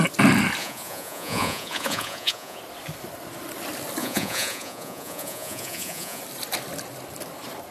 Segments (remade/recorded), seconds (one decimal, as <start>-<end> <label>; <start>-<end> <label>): 0.0-0.6 recorded; 0.6-2.6 remade; 2.6-4.0 recorded; 4.0-6.2 remade; 6.2-7.7 recorded